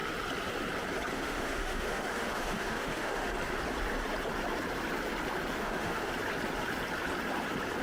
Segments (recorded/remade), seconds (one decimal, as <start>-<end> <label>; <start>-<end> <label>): 0.0-1.1 recorded; 1.1-3.3 remade; 3.3-5.6 recorded; 5.6-6.1 remade; 6.1-7.8 recorded